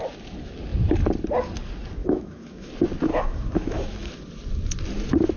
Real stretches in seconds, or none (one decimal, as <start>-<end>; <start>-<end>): 0.0-2.0; 2.7-3.1; 4.1-5.4